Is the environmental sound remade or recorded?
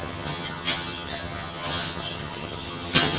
remade